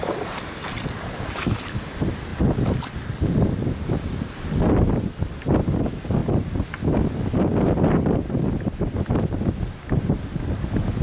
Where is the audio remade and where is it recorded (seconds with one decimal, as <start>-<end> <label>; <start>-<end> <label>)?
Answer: 0.0-11.0 recorded